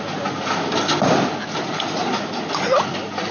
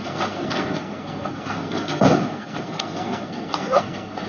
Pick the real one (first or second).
first